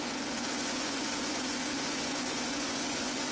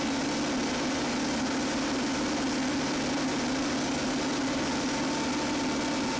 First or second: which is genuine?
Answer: second